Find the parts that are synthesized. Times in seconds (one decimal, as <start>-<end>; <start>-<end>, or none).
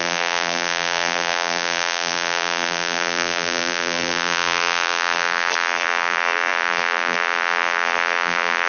0.0-8.7